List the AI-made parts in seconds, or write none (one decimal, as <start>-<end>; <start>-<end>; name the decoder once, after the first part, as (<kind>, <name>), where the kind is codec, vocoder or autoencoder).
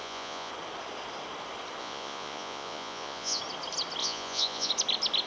0.0-0.5 (vocoder, Vocos); 1.8-3.4; 4.0-4.7